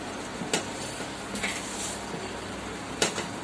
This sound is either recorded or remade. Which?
recorded